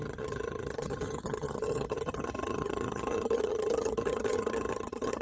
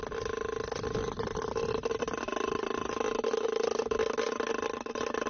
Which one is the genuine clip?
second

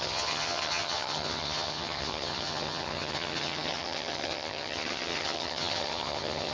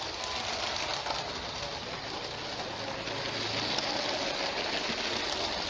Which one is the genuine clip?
second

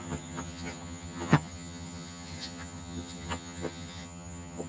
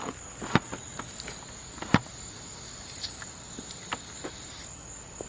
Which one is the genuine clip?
second